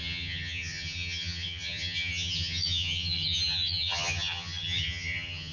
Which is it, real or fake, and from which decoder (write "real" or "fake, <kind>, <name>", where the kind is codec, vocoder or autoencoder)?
fake, vocoder, HiFi-GAN